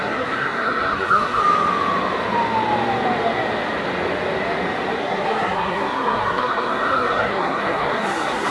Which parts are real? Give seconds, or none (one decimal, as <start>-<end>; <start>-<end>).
1.4-5.0